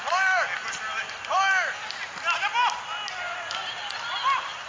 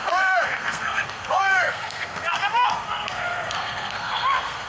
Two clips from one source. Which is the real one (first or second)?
first